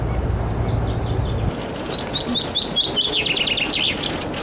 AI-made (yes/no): no